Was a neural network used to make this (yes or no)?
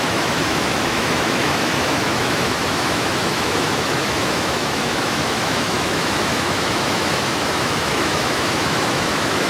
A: yes